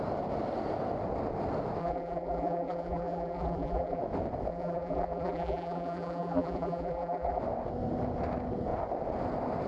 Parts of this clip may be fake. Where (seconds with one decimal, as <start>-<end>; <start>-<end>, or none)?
1.8-4.0; 4.5-7.4